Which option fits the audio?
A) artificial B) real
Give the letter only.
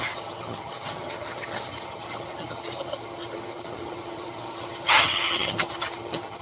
A